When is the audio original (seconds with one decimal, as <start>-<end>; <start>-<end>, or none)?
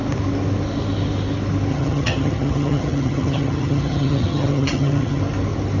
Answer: 0.0-1.7; 5.2-5.8